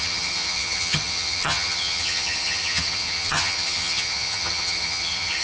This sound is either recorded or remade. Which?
remade